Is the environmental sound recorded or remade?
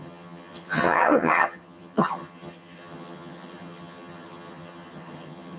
remade